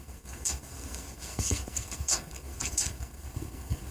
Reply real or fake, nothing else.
fake